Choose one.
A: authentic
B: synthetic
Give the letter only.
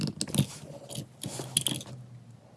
A